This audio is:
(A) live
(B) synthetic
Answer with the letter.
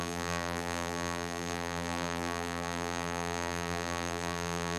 B